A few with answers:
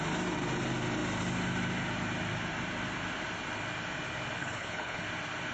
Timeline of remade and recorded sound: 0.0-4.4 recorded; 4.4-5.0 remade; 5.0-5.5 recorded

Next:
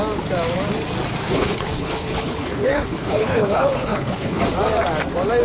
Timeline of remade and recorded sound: 0.0-1.2 recorded; 1.2-4.4 remade; 4.4-5.4 recorded